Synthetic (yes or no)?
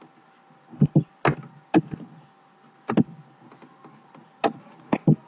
no